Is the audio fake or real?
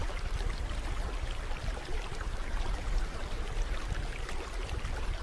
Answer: fake